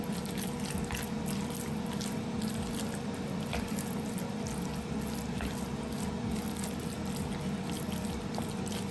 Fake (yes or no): no